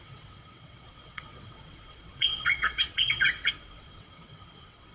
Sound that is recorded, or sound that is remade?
remade